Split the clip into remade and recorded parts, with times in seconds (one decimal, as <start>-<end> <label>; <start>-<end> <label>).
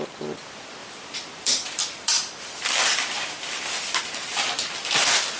0.0-0.8 recorded; 0.8-4.0 remade; 4.0-5.4 recorded